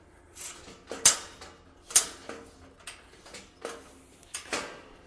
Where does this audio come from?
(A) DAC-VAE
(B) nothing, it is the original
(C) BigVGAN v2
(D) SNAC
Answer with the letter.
B